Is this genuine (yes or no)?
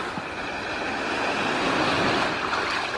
yes